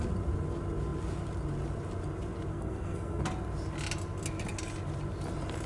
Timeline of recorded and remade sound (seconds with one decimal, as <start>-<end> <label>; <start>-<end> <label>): 0.0-2.5 recorded; 2.5-3.2 remade; 3.2-5.7 recorded